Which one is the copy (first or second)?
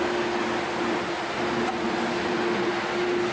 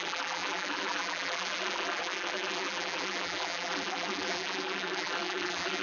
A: second